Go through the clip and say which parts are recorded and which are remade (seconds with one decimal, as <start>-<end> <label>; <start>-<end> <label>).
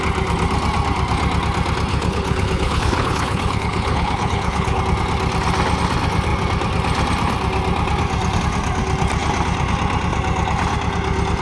0.0-1.9 recorded; 1.9-4.8 remade; 4.8-11.4 recorded